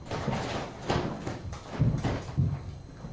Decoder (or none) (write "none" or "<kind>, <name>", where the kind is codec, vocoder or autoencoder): none